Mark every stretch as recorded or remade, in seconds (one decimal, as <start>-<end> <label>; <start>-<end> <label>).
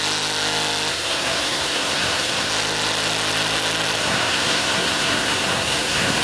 0.0-0.9 recorded; 0.9-2.5 remade; 2.5-4.0 recorded; 4.0-6.2 remade